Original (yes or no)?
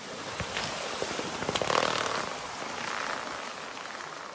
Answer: yes